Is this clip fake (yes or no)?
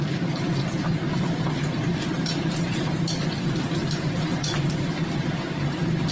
yes